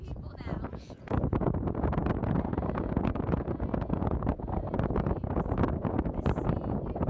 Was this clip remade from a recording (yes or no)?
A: yes